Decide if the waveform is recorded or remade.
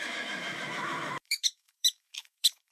remade